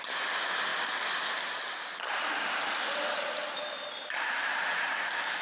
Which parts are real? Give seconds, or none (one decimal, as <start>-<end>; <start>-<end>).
0.0-5.4